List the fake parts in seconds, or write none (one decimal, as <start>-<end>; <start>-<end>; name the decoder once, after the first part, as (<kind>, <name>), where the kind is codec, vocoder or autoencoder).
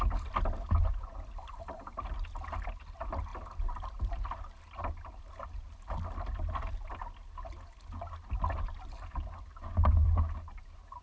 10.0-10.5 (vocoder, BigVGAN v2)